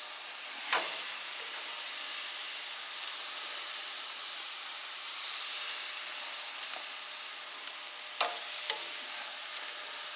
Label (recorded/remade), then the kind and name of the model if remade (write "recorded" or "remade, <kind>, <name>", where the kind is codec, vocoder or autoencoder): recorded